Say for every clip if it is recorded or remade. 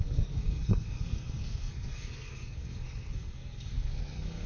remade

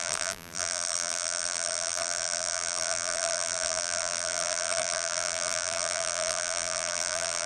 remade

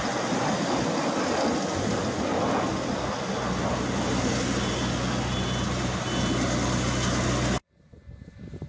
recorded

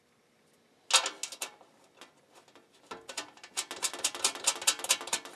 recorded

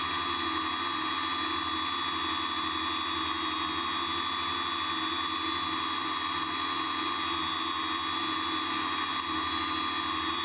recorded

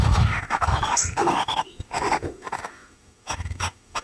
remade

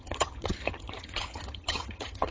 remade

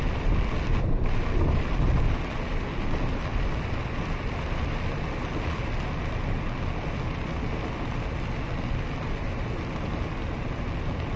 recorded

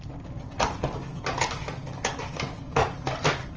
recorded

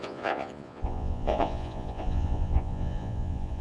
remade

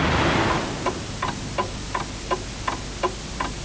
recorded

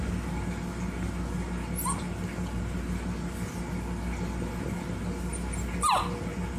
recorded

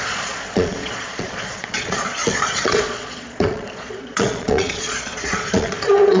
remade